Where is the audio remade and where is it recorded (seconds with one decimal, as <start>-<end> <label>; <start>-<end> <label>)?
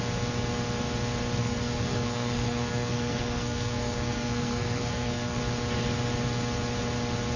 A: 0.0-1.4 recorded; 1.4-5.4 remade; 5.4-7.4 recorded